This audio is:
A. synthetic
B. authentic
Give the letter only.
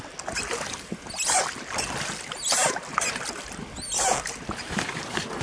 B